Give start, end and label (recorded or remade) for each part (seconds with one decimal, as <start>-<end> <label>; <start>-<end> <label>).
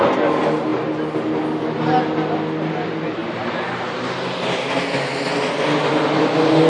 0.0-6.7 recorded